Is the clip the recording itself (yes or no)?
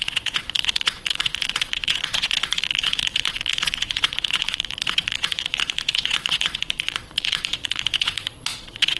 no